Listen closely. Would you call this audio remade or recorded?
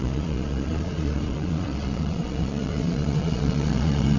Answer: remade